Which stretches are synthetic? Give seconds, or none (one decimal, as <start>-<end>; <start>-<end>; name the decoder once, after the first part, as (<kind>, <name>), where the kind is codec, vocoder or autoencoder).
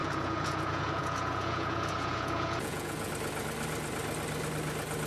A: 0.0-3.1 (vocoder, Vocos)